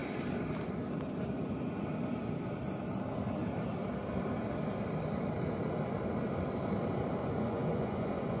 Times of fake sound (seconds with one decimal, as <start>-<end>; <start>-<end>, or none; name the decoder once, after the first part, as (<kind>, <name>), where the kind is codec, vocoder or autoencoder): 7.2-8.4 (vocoder, Vocos)